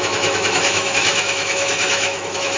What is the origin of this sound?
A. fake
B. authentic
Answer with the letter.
A